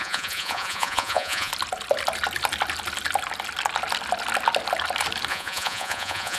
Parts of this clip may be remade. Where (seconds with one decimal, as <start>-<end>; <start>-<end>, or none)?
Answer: 0.0-1.5; 5.3-6.4